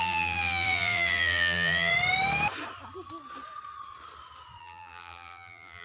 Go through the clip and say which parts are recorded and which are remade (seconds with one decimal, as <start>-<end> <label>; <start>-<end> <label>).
0.0-1.9 remade; 1.9-4.6 recorded; 4.6-5.8 remade